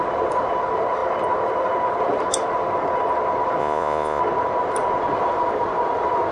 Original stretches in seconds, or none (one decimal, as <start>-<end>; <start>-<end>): 0.0-3.6; 4.2-6.3